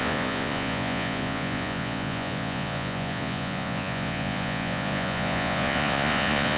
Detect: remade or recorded remade